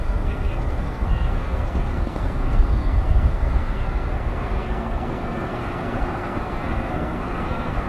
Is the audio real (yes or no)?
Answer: no